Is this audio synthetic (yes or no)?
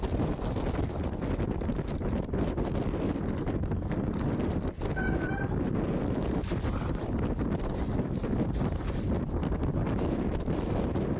no